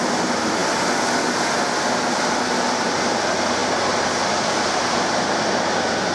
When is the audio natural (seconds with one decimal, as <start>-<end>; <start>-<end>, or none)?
0.0-3.6; 4.3-6.1